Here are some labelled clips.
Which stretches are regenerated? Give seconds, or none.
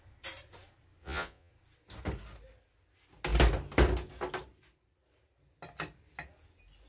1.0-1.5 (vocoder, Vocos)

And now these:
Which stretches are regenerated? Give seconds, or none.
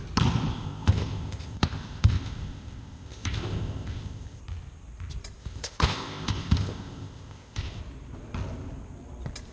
0.5-4.4 (codec, ZipCodec); 5.4-7.8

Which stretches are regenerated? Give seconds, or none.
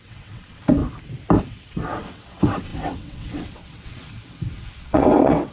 0.0-0.8 (vocoder, WaveNeXt); 1.4-5.5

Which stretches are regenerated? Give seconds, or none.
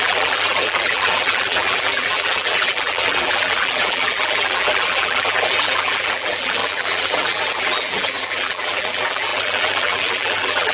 0.0-10.7 (vocoder, BigVGAN v2)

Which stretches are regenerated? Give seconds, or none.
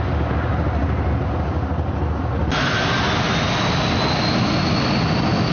none